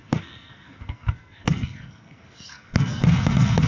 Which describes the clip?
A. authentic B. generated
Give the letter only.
B